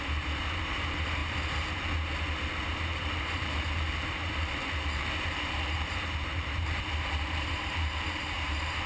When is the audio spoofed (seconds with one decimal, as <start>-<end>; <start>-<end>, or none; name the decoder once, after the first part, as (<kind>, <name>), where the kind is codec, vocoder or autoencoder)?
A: 0.0-1.2 (vocoder, BigVGAN v2); 2.8-8.9